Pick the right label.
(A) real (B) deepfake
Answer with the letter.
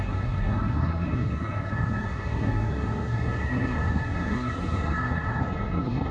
B